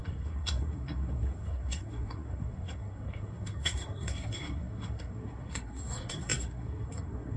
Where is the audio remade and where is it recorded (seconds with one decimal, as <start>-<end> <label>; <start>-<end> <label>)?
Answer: 0.0-7.4 remade